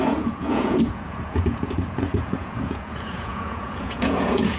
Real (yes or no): no